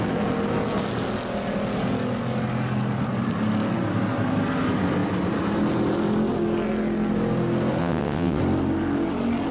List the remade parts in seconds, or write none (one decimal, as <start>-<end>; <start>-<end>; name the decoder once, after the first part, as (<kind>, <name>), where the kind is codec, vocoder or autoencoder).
7.8-8.4 (vocoder, WaveNeXt)